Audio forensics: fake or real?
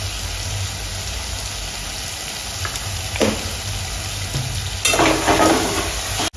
real